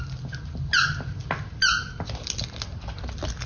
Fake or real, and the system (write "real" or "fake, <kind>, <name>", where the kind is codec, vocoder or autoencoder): real